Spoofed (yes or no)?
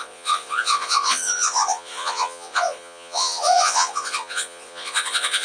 yes